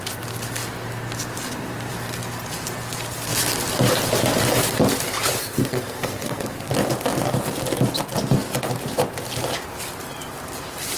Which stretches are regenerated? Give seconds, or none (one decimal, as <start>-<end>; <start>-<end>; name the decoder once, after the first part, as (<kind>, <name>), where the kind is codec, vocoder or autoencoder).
5.4-6.7 (codec, SNAC)